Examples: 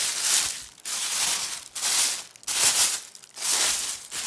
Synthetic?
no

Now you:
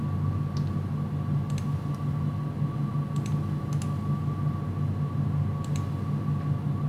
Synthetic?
no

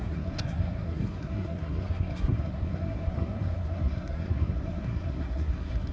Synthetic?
yes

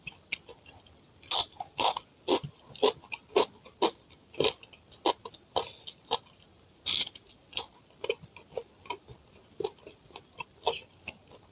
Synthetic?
no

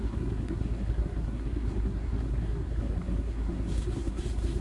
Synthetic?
yes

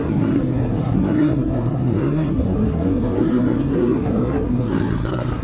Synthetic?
yes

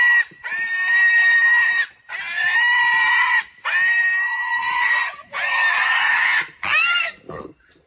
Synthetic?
no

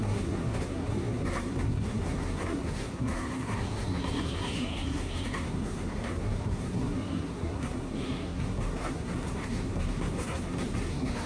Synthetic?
yes